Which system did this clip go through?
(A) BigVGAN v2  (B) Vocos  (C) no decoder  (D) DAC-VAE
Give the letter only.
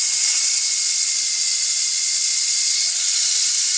B